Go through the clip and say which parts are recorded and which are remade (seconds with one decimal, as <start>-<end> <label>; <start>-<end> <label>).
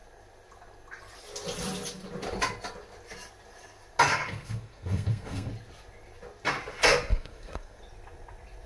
0.0-4.1 recorded; 4.1-5.5 remade; 5.5-7.1 recorded; 7.1-7.8 remade; 7.8-8.7 recorded